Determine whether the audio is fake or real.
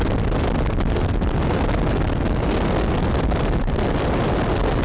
real